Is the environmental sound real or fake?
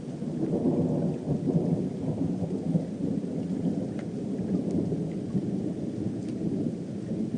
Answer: real